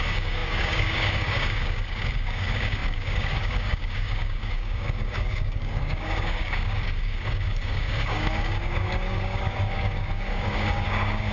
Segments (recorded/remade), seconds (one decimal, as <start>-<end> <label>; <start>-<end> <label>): 0.0-11.3 remade